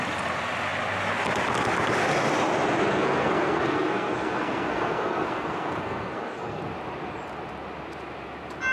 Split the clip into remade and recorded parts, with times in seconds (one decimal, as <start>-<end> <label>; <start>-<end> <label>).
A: 0.0-2.9 recorded; 2.9-6.6 remade; 6.6-8.7 recorded